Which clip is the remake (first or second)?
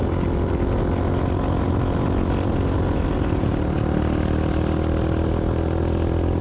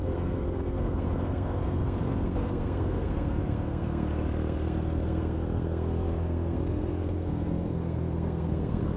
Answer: second